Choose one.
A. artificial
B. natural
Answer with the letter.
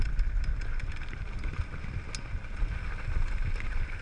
B